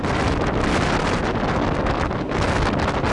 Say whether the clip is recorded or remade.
recorded